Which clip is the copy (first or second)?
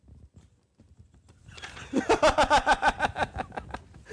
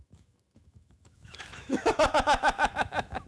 second